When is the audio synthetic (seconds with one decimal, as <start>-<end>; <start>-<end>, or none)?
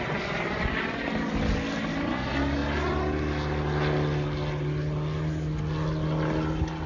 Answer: none